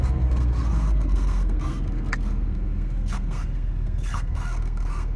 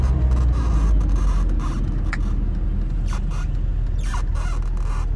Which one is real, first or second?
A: second